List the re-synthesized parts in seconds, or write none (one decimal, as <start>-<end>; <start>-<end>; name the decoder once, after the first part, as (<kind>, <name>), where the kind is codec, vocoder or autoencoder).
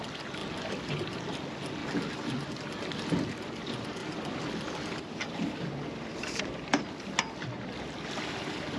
none